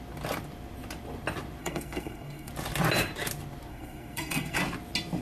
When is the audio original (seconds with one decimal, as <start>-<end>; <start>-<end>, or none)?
0.0-1.6; 2.5-3.7; 4.6-5.2